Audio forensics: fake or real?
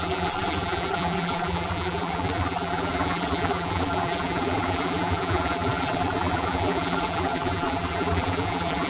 fake